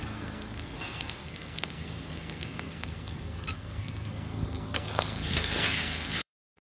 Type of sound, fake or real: fake